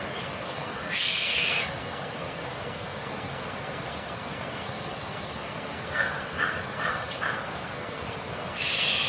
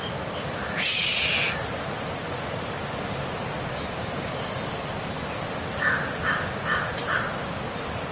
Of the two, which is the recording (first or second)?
second